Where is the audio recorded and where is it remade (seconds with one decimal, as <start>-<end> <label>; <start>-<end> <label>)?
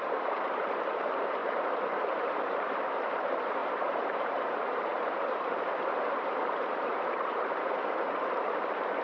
0.0-9.0 remade